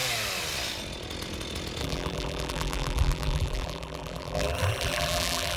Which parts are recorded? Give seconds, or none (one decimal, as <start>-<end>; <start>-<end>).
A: 0.0-1.8